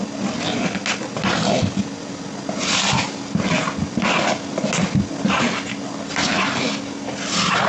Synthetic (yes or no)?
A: no